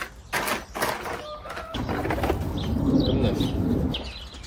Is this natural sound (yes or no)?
yes